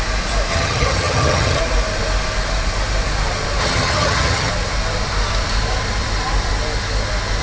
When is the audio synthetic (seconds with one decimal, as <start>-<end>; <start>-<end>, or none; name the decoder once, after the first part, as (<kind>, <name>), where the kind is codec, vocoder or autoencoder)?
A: 0.5-1.6 (vocoder, HiFi-GAN); 3.6-4.5